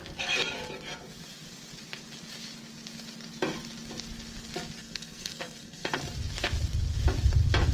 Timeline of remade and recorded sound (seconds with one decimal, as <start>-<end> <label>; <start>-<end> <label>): 0.0-4.8 recorded; 4.8-6.0 remade; 6.0-7.7 recorded